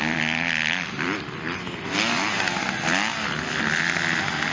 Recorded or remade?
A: recorded